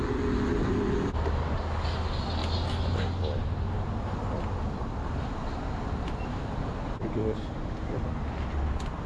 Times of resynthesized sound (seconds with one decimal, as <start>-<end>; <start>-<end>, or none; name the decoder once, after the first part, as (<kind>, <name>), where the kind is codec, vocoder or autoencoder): none

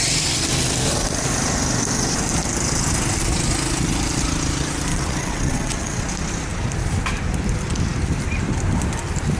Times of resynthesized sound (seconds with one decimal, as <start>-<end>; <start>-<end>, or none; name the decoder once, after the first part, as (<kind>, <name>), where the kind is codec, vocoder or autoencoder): 4.9-6.0 (vocoder, WaveNeXt)

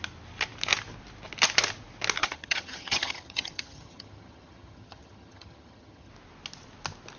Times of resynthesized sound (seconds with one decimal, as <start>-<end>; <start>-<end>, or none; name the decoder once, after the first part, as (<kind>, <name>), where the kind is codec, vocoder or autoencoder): 2.2-6.1 (vocoder, HiFi-GAN)

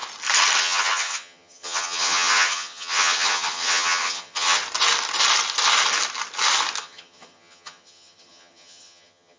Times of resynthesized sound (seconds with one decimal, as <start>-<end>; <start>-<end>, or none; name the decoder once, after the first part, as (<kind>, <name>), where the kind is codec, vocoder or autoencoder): 0.6-4.6 (vocoder, HiFi-GAN); 6.8-9.4

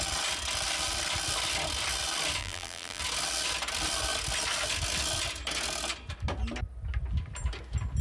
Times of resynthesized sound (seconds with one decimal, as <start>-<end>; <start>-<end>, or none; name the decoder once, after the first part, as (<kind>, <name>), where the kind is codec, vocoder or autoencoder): 2.4-3.0 (vocoder, BigVGAN v2)

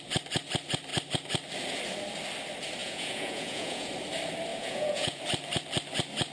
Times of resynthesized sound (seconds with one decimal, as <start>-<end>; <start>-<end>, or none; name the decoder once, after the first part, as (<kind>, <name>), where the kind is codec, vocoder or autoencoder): 2.8-3.9 (vocoder, Vocos); 4.5-5.2

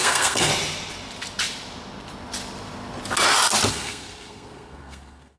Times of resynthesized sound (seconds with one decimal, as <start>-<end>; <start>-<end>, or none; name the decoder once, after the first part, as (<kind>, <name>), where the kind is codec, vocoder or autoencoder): 0.0-0.5 (codec, SNAC); 3.7-5.4